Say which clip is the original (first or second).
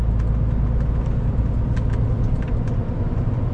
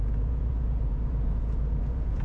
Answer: first